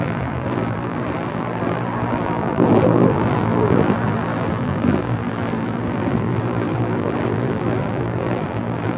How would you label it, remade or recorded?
remade